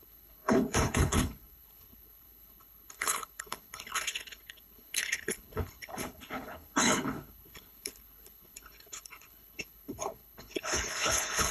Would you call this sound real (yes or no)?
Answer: no